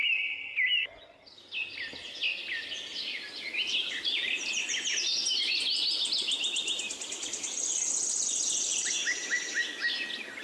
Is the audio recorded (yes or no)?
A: yes